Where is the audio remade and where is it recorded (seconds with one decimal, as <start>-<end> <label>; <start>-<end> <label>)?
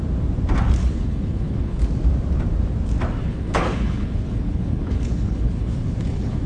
0.0-0.8 recorded; 0.8-1.8 remade; 1.8-3.2 recorded; 3.2-6.5 remade